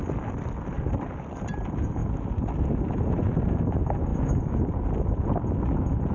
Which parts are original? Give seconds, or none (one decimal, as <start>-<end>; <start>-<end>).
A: 0.0-6.1